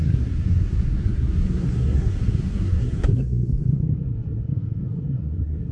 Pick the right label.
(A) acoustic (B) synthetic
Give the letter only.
B